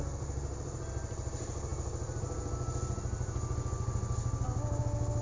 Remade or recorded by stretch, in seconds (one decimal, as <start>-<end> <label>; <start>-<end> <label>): 0.0-5.2 recorded